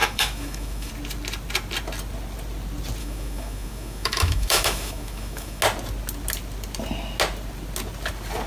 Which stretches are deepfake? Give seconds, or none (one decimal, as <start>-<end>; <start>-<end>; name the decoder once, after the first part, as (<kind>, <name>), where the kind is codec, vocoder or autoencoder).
0.0-0.9 (autoencoder, DAC-VAE); 3.0-5.6